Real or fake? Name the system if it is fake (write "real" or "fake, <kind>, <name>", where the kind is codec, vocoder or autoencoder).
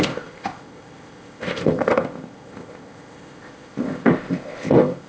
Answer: fake, codec, ZipCodec